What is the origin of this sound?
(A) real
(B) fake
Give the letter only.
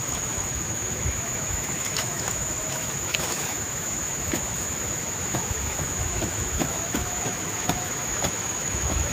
B